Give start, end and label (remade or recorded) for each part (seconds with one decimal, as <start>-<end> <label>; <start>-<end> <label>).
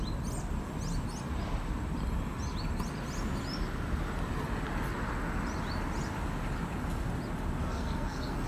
0.0-7.6 recorded; 7.6-8.5 remade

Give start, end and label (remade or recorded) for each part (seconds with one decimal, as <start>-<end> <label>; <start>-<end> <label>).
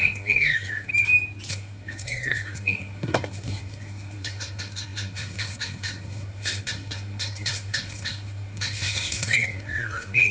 0.0-0.9 remade; 0.9-1.5 recorded; 1.5-10.3 remade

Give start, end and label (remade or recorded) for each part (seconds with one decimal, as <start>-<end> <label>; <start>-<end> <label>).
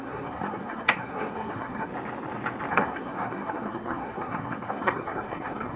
0.0-1.9 remade; 1.9-2.7 recorded; 2.7-5.8 remade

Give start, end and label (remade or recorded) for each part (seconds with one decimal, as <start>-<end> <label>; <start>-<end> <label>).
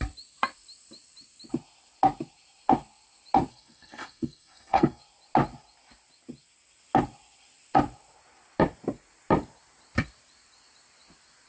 0.0-3.5 recorded; 3.5-5.0 remade; 5.0-11.5 recorded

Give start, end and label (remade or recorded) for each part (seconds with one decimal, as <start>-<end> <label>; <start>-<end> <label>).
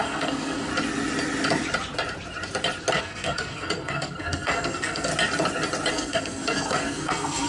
0.0-0.7 remade; 0.7-3.0 recorded; 3.0-5.1 remade; 5.1-5.9 recorded; 5.9-7.5 remade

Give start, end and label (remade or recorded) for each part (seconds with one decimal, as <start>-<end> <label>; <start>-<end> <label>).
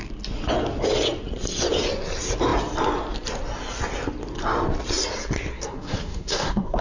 0.0-5.5 recorded; 5.5-6.8 remade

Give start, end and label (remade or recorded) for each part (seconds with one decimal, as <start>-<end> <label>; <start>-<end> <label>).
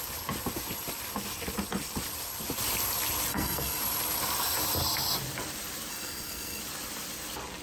0.0-3.3 recorded; 3.3-3.8 remade; 3.8-5.9 recorded; 5.9-6.6 remade; 6.6-7.6 recorded